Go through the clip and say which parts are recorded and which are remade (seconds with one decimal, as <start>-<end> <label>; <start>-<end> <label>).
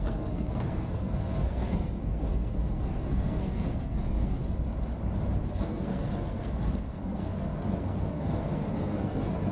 0.0-4.4 remade; 4.4-5.5 recorded; 5.5-9.5 remade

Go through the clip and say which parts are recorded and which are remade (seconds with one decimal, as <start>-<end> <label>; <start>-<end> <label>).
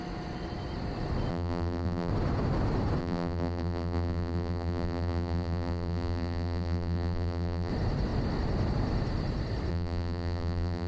0.0-1.3 recorded; 1.3-2.1 remade; 2.1-3.0 recorded; 3.0-7.7 remade; 7.7-9.7 recorded; 9.7-10.9 remade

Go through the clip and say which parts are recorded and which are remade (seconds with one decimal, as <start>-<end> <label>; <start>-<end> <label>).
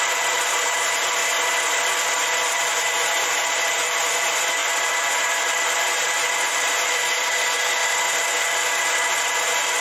0.0-1.2 remade; 1.2-2.0 recorded; 2.0-7.8 remade; 7.8-9.1 recorded; 9.1-9.8 remade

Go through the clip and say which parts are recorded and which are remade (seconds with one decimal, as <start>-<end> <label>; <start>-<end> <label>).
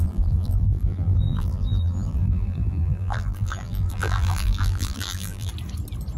0.0-5.5 remade; 5.5-6.2 recorded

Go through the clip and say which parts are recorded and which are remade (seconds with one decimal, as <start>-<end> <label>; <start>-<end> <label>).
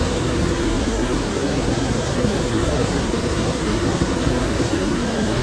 0.0-5.4 remade